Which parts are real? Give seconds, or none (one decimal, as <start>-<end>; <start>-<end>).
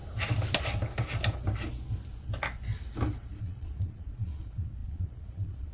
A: 0.0-3.4